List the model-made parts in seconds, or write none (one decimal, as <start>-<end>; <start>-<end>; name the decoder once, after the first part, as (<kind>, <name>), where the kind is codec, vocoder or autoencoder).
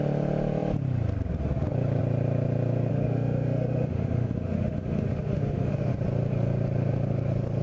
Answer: 2.9-5.9 (autoencoder, DAC-VAE)